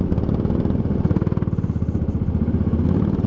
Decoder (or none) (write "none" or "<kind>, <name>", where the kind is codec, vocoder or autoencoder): none